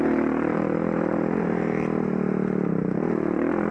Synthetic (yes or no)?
yes